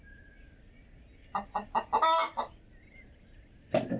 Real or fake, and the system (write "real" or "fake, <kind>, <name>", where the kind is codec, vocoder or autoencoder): real